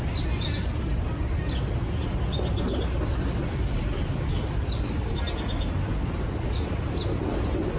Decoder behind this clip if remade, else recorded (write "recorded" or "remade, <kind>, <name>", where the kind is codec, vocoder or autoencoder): recorded